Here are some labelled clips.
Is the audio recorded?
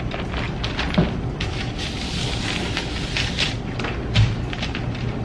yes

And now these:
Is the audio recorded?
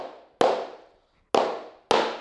yes